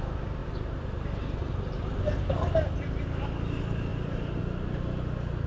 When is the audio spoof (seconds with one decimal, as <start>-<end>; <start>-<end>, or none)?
0.4-2.2; 3.9-4.4